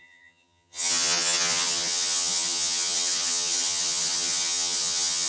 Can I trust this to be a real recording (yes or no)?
no